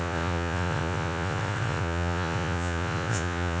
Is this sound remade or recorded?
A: remade